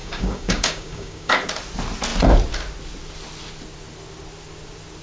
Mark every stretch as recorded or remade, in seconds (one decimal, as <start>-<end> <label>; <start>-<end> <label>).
0.0-1.3 remade; 1.3-5.0 recorded